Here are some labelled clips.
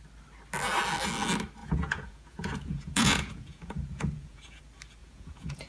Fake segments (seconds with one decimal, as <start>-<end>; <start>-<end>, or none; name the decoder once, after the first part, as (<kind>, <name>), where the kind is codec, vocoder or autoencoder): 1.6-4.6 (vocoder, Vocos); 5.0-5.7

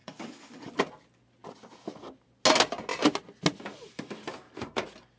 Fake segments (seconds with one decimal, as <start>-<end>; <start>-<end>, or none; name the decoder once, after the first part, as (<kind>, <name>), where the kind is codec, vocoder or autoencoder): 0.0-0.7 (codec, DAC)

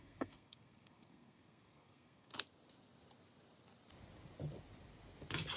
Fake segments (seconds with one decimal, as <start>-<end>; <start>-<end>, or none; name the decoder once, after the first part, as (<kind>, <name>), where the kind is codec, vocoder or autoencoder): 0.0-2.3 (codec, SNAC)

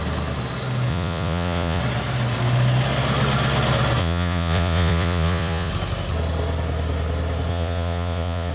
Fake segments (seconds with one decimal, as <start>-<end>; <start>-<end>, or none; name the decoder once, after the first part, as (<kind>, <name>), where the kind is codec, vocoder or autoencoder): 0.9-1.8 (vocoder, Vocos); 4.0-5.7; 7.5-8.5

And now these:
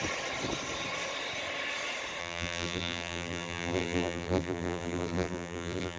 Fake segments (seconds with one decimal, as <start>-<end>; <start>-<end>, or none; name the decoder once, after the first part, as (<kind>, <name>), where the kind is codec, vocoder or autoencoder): 2.2-6.0 (vocoder, BigVGAN v2)

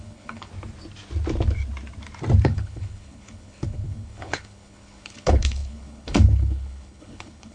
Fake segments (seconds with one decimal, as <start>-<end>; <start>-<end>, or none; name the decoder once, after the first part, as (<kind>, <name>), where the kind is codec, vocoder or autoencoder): 0.0-0.5 (codec, HILCodec); 2.4-7.5